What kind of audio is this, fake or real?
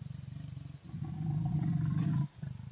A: real